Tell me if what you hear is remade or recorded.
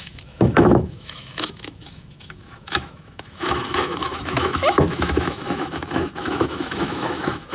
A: remade